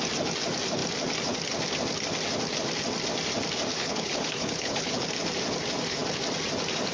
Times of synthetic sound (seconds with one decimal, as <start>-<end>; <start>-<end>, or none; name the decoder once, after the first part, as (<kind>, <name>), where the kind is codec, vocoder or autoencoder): 3.7-5.1 (codec, HILCodec)